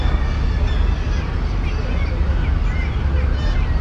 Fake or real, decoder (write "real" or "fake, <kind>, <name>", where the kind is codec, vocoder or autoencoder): real